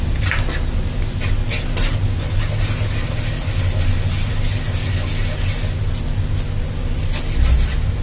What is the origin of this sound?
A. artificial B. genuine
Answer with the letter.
B